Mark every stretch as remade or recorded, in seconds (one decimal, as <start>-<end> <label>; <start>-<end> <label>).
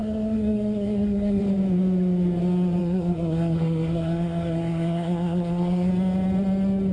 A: 0.0-1.4 remade; 1.4-2.8 recorded; 2.8-5.9 remade; 5.9-6.9 recorded